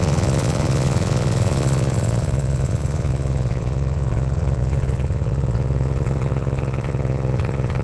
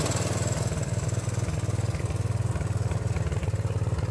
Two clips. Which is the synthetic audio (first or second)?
first